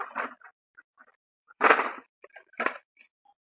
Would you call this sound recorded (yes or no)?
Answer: no